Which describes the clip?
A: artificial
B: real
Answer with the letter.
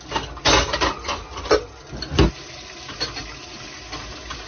B